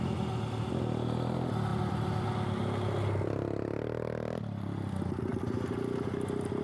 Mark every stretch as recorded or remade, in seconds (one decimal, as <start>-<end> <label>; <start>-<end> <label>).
0.0-6.6 recorded